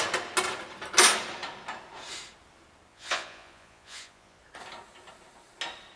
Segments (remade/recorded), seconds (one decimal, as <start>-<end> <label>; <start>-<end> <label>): 0.0-2.9 recorded; 2.9-4.4 remade; 4.4-6.0 recorded